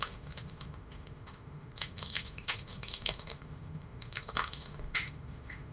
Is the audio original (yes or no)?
no